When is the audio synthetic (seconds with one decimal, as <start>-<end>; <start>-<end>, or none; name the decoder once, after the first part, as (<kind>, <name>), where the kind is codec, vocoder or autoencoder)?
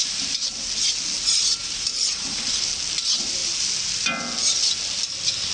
1.6-2.5 (vocoder, BigVGAN v2)